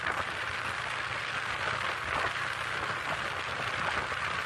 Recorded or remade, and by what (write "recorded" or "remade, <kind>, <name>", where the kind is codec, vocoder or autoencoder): recorded